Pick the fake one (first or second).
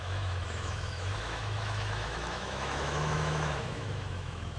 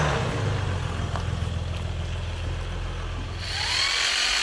first